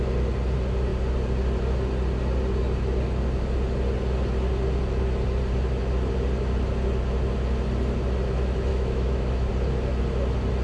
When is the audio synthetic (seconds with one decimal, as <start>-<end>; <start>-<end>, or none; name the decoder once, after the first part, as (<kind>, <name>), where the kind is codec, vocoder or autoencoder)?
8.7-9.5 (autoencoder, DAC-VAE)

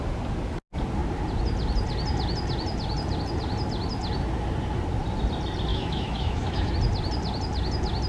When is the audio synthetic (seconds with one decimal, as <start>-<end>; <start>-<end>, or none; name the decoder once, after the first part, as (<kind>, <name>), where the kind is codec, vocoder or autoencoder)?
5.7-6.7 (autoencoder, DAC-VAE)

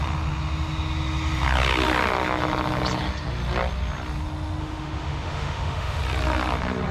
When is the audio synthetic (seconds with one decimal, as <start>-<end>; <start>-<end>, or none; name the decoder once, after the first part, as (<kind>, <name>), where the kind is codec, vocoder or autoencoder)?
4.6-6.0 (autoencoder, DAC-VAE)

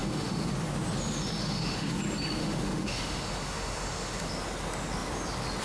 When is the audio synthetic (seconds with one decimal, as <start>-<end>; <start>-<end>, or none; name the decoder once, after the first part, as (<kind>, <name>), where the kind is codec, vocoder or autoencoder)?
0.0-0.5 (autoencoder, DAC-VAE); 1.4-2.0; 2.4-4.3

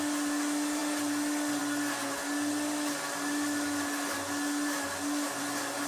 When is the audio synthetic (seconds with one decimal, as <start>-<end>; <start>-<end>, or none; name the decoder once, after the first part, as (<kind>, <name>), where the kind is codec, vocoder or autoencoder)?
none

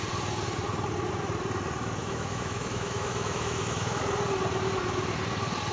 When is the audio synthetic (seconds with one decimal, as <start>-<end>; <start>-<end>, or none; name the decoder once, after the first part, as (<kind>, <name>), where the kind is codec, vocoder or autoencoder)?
2.0-4.0 (autoencoder, DAC-VAE)